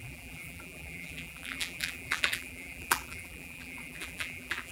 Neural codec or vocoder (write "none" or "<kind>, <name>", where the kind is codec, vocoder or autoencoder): vocoder, BigVGAN v2